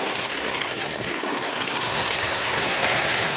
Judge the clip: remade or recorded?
remade